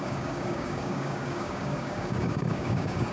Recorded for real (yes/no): no